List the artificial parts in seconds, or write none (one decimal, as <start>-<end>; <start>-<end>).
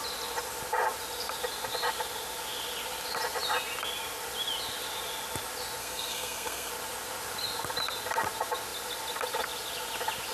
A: 5.8-6.7